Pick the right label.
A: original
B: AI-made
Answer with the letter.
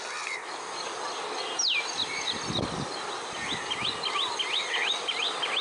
A